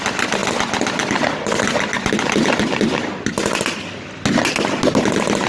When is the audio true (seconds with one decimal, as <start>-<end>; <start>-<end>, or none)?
0.0-5.5